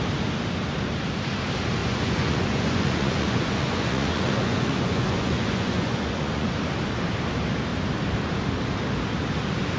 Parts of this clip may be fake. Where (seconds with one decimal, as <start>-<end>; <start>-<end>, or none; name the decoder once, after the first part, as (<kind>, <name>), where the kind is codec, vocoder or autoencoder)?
1.8-6.5 (vocoder, Vocos)